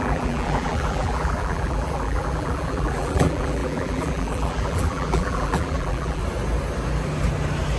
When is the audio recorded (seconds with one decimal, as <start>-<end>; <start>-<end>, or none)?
6.2-7.8